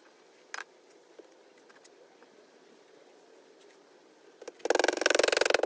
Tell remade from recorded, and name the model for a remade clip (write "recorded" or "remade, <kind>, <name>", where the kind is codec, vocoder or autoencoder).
recorded